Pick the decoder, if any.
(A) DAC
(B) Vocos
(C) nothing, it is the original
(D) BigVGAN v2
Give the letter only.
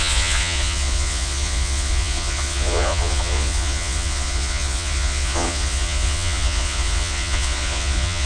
B